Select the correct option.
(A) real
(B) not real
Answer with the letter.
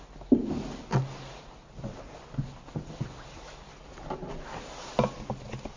A